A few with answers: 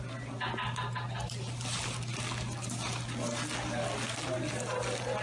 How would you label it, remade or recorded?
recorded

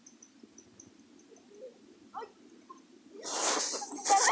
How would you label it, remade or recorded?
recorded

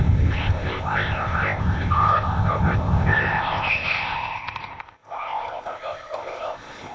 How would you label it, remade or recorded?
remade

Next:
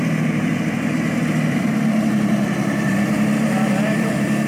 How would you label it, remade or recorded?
remade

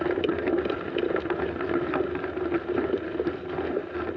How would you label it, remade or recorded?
recorded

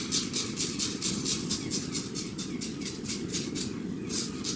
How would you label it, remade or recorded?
recorded